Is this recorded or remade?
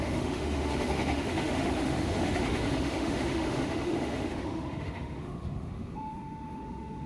remade